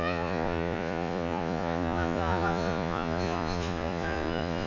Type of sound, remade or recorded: remade